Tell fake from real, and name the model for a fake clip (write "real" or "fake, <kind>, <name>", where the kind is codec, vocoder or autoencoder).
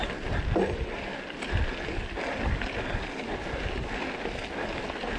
real